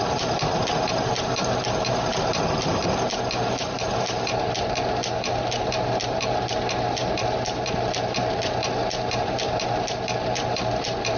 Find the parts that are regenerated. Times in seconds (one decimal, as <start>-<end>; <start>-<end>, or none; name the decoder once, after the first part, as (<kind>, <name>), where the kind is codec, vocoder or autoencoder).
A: 0.0-2.8 (vocoder, BigVGAN v2); 3.5-11.2